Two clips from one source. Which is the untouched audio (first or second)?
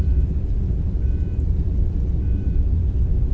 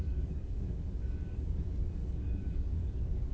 first